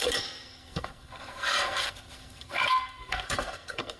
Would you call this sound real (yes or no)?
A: no